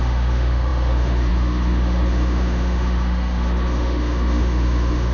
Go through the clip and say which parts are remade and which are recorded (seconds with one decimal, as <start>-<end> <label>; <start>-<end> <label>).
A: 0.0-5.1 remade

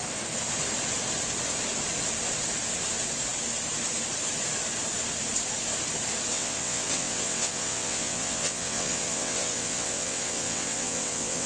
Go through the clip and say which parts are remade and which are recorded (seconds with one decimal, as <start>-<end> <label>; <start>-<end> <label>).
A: 0.0-6.3 recorded; 6.3-11.5 remade

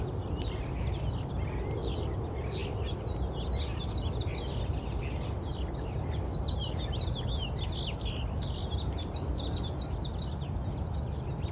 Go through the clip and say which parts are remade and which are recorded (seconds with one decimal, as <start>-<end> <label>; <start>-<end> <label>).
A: 0.0-11.5 recorded